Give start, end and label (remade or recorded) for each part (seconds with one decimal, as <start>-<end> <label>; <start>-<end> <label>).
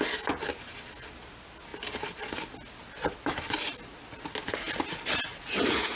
0.0-5.3 recorded; 5.3-6.0 remade